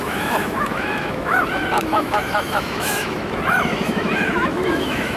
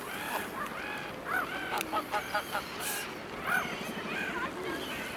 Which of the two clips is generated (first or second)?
first